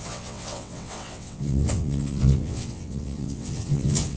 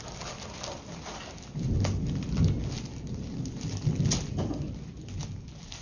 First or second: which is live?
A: second